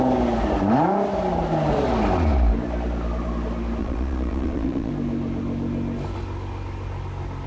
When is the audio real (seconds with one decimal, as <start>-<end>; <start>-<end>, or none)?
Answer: 0.0-3.8; 4.9-7.5